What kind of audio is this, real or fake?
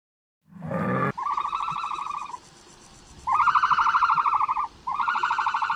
fake